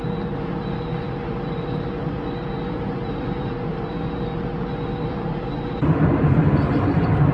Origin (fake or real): fake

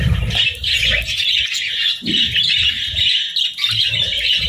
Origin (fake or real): real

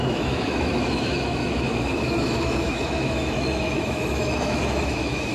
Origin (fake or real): fake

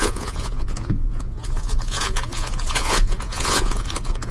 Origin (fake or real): fake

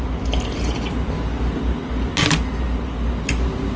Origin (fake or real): real